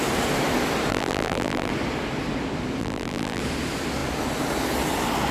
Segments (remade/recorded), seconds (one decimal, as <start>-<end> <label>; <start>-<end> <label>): 0.0-0.9 recorded; 0.9-1.7 remade; 1.7-2.8 recorded; 2.8-3.4 remade; 3.4-5.3 recorded